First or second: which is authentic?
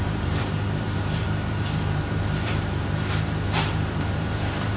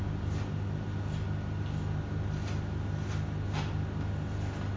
second